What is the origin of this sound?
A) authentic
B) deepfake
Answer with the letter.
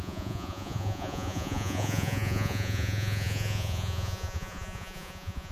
B